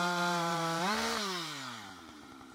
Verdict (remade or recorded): remade